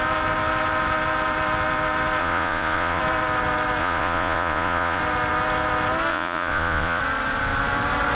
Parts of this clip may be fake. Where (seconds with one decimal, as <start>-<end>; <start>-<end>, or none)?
2.2-3.0; 3.8-5.0; 6.1-7.0